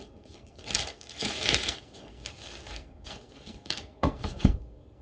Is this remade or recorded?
remade